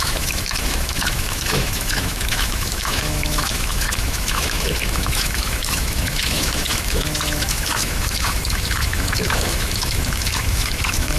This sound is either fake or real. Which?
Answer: fake